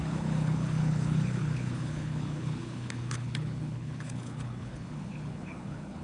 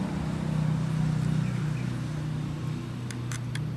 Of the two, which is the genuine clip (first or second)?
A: second